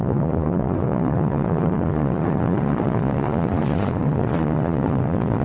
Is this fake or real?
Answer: fake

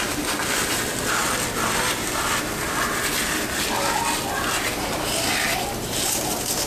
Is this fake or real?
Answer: real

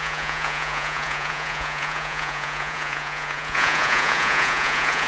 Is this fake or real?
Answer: fake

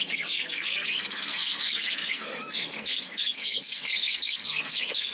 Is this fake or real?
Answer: fake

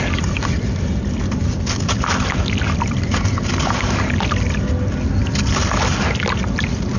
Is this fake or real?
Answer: real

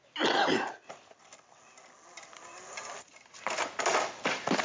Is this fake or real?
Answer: real